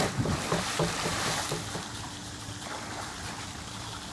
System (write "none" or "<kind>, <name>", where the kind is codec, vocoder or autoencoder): vocoder, BigVGAN v2